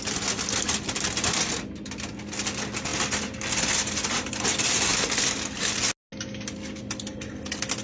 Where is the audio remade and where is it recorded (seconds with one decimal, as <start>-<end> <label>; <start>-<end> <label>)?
0.0-7.8 recorded